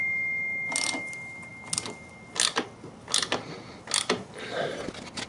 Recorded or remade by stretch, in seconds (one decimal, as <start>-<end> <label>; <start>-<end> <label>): 0.0-5.3 recorded